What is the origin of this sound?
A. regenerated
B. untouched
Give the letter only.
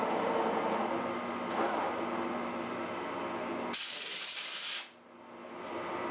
B